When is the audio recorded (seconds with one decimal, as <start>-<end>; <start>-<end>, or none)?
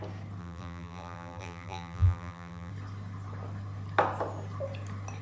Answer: 0.0-0.4; 2.7-5.2